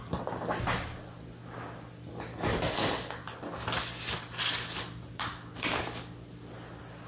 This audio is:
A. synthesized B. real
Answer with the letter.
B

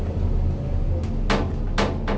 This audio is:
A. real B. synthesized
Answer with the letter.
A